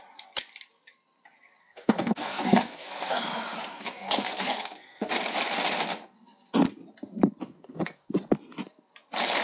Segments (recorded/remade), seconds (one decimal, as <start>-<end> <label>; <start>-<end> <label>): 0.0-1.6 recorded; 1.6-3.2 remade; 3.2-3.7 recorded; 3.7-5.1 remade; 5.1-7.4 recorded; 7.4-8.1 remade; 8.1-9.4 recorded